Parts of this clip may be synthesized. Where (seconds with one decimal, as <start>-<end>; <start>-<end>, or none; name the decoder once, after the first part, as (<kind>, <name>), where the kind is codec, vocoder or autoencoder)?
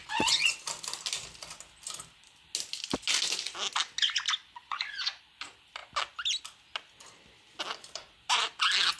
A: 0.0-0.5 (vocoder, Vocos); 4.6-5.2